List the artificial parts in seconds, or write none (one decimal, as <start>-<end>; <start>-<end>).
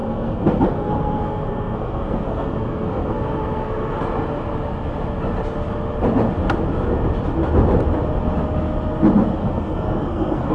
0.0-4.0; 9.4-10.5